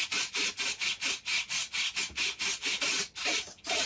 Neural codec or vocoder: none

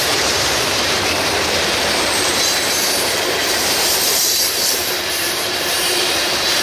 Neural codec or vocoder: vocoder, BigVGAN v2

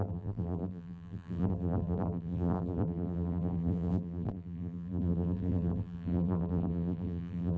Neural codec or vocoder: vocoder, BigVGAN v2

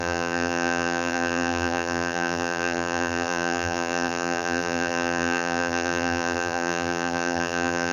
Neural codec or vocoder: vocoder, BigVGAN v2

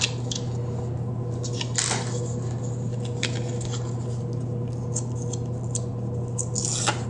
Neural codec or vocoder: none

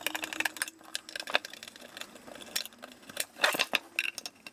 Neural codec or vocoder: none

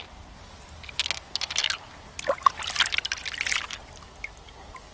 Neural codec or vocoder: none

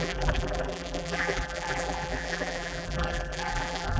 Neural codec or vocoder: vocoder, BigVGAN v2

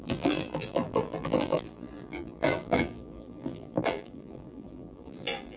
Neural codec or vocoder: vocoder, BigVGAN v2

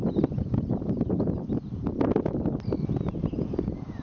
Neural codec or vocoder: none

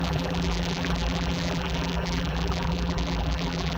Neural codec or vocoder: vocoder, BigVGAN v2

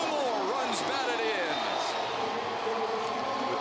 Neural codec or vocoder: none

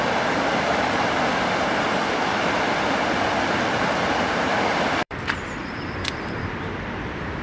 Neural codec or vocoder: vocoder, BigVGAN v2